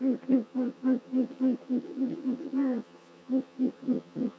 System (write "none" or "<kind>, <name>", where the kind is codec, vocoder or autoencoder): vocoder, HiFi-GAN